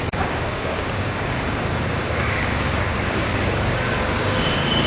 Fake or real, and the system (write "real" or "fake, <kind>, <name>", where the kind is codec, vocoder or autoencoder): fake, codec, DAC